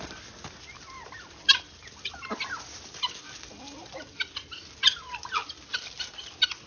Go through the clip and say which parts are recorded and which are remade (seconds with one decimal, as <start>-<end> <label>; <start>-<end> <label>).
0.0-6.7 recorded